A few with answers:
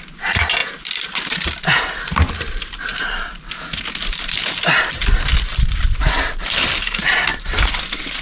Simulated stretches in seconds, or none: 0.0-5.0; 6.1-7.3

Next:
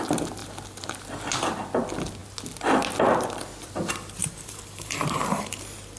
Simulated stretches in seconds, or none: 0.4-1.0; 4.2-6.0

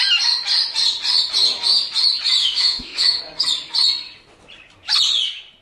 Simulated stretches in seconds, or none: 2.4-3.2

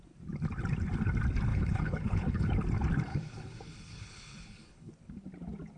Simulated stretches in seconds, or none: 1.5-2.5; 3.1-4.9